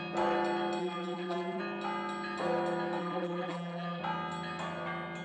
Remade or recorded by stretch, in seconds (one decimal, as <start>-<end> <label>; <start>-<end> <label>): 0.0-0.8 recorded; 0.8-1.6 remade; 1.6-3.0 recorded; 3.0-4.0 remade; 4.0-5.2 recorded